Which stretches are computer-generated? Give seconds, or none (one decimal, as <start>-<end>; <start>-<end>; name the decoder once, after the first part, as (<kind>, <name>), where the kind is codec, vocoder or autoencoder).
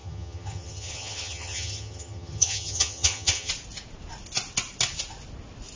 0.0-3.5 (vocoder, HiFi-GAN)